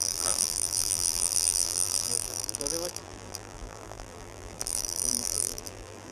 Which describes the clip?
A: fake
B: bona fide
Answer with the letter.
A